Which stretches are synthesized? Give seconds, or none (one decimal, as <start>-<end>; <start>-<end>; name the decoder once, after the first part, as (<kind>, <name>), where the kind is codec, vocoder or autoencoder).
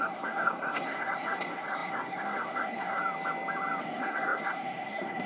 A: 0.0-3.0 (codec, SNAC); 3.8-5.3